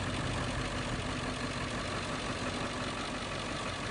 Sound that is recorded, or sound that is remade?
recorded